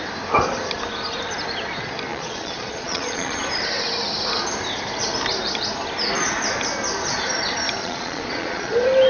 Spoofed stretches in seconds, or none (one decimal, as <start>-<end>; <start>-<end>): 2.1-3.4; 7.8-8.7